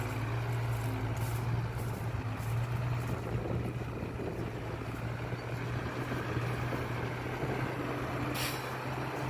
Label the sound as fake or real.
real